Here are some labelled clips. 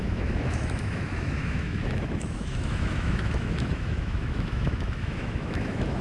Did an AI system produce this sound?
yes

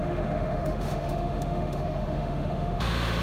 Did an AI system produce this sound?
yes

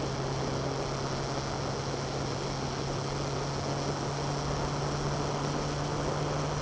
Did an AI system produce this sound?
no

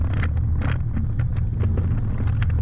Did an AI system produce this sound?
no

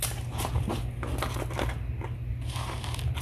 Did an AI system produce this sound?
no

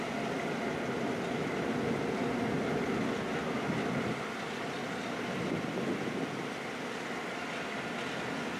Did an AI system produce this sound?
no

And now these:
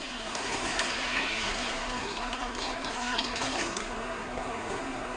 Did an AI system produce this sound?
yes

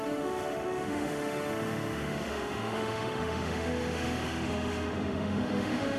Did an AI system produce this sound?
yes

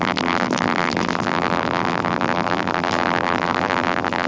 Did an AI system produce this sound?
yes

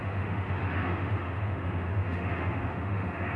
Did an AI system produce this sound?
yes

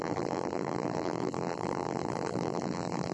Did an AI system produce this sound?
yes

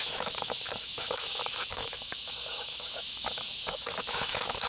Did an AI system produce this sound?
yes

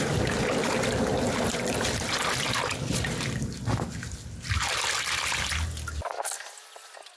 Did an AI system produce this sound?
no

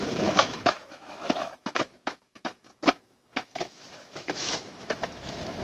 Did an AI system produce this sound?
yes